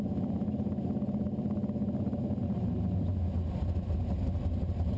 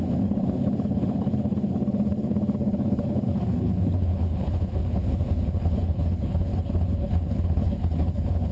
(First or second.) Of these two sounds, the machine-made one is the second